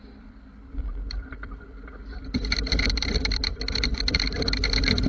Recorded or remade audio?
remade